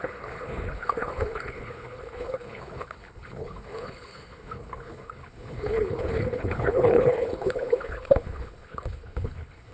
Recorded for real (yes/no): no